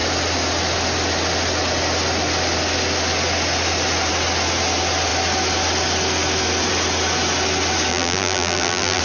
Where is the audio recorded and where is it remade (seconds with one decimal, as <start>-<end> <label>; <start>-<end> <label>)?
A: 0.0-7.9 recorded; 7.9-9.0 remade